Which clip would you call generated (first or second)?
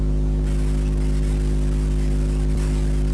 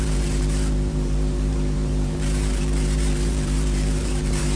second